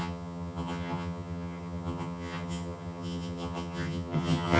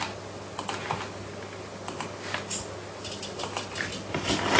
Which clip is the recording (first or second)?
second